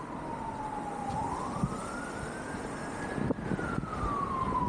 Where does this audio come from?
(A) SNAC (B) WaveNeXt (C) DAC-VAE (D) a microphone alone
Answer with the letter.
D